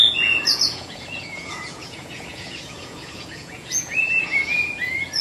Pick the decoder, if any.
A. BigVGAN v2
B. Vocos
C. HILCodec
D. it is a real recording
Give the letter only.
B